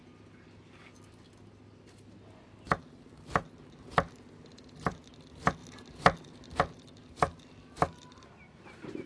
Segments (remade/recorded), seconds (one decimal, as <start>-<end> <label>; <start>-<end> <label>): 0.0-9.1 recorded